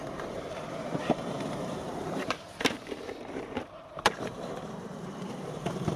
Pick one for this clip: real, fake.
fake